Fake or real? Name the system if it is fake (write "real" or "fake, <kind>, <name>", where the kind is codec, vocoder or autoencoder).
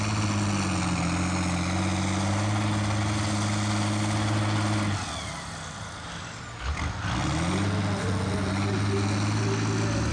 real